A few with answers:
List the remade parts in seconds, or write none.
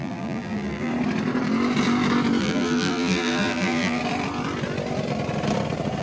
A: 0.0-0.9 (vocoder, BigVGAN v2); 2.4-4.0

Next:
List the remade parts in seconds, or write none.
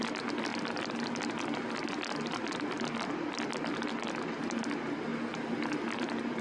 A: 0.0-3.7 (vocoder, BigVGAN v2); 4.4-5.1; 6.0-6.4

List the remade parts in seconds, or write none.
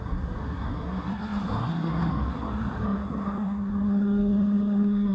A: 0.0-5.1 (codec, SNAC)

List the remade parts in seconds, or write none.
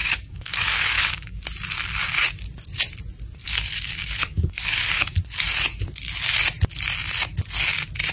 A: 0.0-1.4 (codec, DAC); 3.4-5.2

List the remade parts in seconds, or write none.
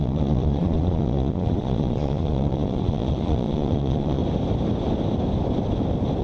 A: 0.0-4.2 (vocoder, Vocos)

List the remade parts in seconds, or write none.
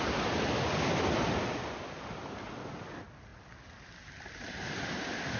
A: none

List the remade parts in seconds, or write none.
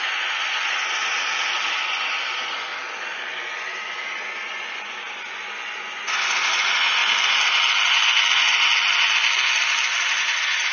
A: 0.0-1.3 (vocoder, Vocos); 1.8-2.7; 3.3-7.0; 10.2-10.7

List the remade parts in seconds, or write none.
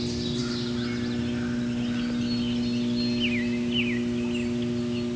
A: none